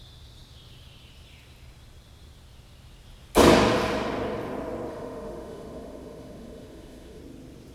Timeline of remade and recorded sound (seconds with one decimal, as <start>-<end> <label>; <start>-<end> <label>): 0.0-4.9 recorded; 4.9-7.2 remade; 7.2-7.7 recorded